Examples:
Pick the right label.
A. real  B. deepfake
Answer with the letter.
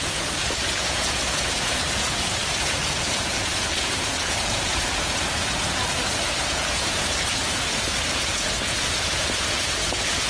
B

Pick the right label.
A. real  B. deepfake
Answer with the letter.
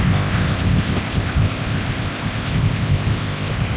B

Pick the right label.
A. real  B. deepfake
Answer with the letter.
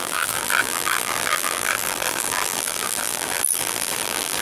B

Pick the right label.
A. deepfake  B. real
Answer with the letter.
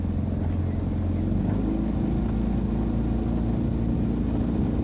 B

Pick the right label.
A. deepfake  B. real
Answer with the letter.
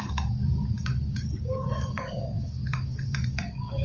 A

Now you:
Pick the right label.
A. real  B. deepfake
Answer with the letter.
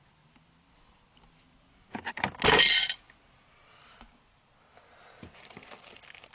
A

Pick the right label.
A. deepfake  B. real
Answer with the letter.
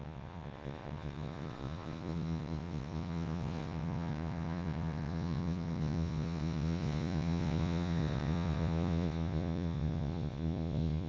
A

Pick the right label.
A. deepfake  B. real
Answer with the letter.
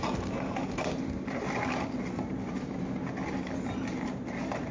B